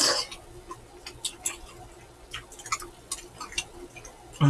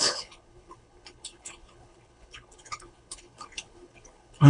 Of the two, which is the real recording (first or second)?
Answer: first